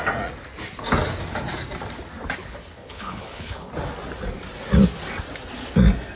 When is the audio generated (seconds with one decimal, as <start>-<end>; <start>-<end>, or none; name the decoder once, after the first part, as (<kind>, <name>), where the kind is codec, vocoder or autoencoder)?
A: 2.4-3.7 (codec, HILCodec)